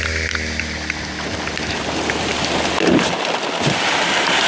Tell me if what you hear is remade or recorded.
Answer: recorded